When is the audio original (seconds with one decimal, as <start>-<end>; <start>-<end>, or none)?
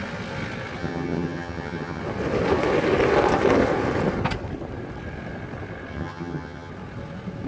0.0-0.8; 2.0-5.9; 6.7-7.5